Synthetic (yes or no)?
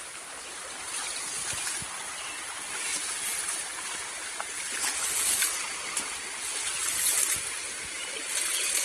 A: no